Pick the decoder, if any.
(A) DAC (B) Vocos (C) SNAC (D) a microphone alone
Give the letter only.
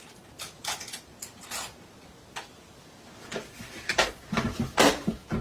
D